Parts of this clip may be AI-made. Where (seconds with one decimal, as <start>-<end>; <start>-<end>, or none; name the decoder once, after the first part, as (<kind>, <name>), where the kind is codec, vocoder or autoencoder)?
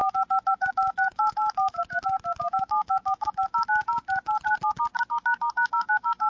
0.5-1.8 (autoencoder, DAC-VAE); 2.5-3.6; 5.1-6.3